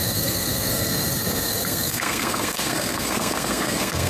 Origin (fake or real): fake